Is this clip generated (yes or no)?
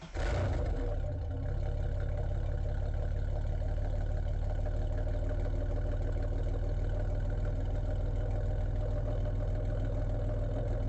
no